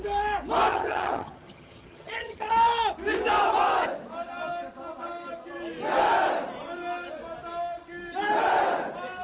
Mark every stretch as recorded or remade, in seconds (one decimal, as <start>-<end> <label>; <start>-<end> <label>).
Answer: 0.0-0.7 recorded; 0.7-2.5 remade; 2.5-9.2 recorded

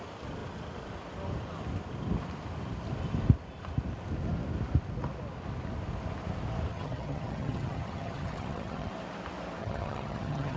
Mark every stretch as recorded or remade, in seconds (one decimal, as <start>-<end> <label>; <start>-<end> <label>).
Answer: 0.0-6.7 recorded; 6.7-8.9 remade; 8.9-9.6 recorded; 9.6-10.6 remade

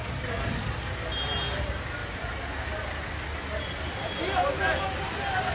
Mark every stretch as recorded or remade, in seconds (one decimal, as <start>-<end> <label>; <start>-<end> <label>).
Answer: 0.0-5.5 recorded